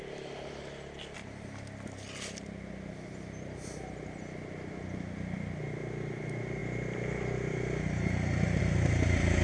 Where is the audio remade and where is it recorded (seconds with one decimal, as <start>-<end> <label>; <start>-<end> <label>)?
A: 0.0-9.4 recorded